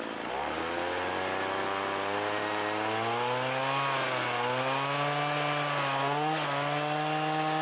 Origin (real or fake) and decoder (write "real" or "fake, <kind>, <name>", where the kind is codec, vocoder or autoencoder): real